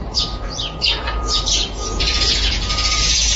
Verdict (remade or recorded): remade